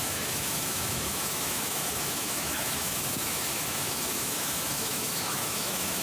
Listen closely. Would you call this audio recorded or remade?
remade